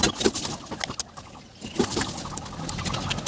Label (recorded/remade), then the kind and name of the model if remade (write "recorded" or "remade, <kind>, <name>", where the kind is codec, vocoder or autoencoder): recorded